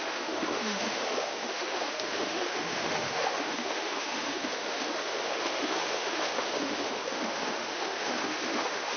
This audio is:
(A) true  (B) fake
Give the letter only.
B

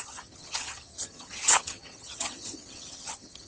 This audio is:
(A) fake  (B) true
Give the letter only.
A